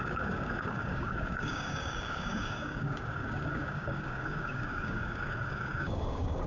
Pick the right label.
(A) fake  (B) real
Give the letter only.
A